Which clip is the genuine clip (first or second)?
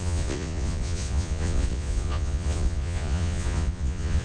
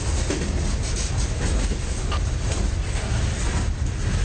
second